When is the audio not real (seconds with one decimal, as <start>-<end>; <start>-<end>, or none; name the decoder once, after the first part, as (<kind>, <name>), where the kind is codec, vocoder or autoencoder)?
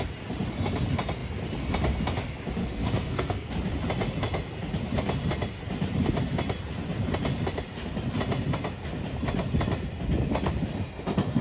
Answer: 2.6-3.5 (codec, SNAC)